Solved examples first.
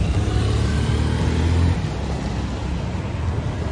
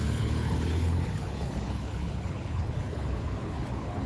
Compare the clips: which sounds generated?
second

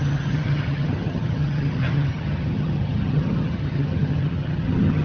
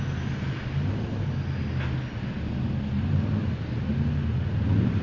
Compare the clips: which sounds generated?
first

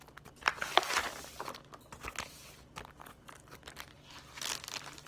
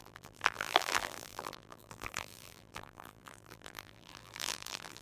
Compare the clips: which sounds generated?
second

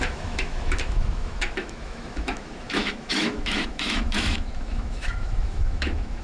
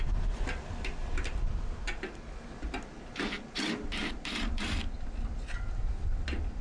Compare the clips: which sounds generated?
first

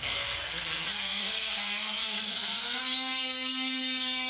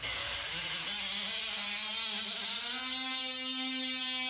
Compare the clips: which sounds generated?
first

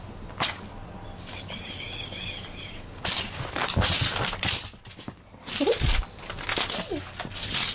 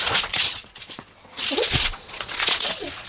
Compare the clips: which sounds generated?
second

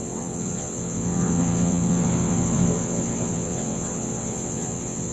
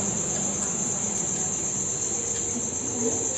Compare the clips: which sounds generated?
first